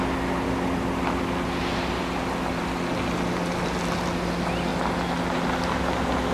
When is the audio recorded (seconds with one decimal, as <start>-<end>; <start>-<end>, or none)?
0.0-6.3